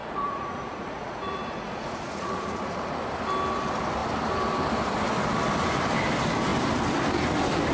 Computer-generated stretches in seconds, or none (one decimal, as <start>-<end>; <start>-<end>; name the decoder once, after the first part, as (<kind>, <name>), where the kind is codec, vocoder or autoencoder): 0.0-3.0 (vocoder, Vocos)